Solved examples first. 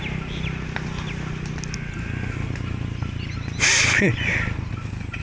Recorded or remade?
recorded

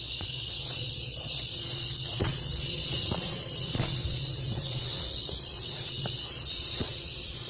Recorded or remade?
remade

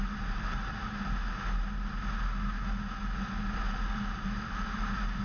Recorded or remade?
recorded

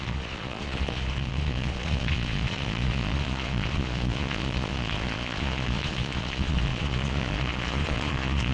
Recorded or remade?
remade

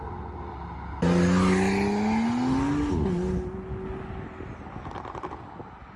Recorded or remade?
recorded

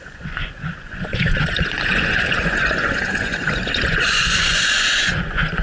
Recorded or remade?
remade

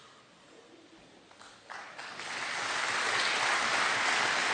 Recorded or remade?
recorded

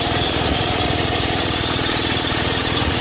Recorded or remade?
remade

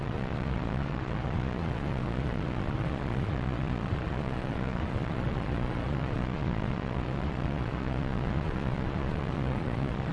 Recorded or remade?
remade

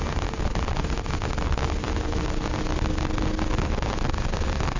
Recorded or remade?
recorded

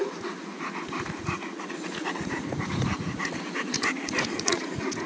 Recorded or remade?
remade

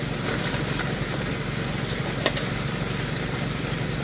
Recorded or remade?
recorded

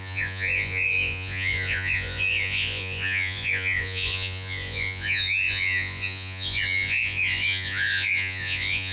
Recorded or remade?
remade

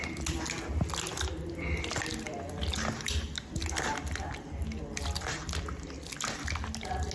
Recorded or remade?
recorded